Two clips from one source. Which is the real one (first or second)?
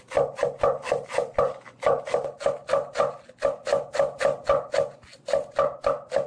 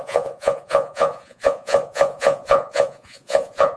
first